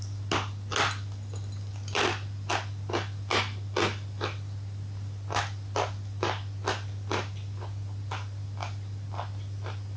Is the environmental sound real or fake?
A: real